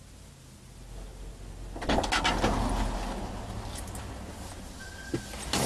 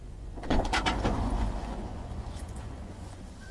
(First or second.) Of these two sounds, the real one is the first